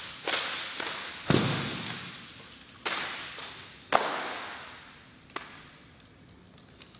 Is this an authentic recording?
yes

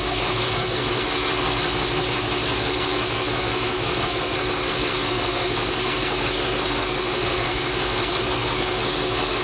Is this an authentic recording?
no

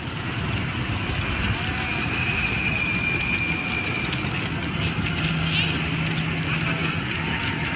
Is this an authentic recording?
yes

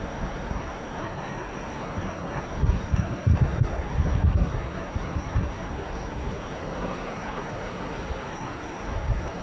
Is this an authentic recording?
no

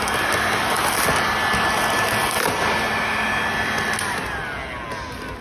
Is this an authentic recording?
yes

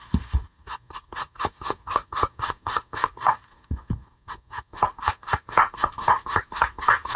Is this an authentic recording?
no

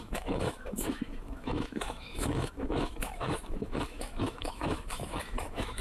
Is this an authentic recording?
no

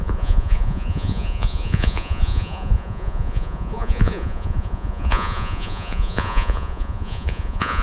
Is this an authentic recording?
no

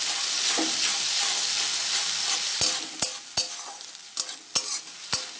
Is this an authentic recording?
yes